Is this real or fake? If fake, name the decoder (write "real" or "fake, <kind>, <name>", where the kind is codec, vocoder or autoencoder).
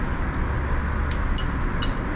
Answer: real